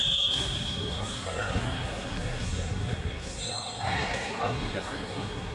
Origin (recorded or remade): remade